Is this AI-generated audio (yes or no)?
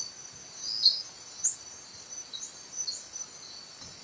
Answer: no